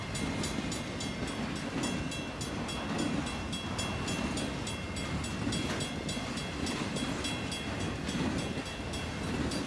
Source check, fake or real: real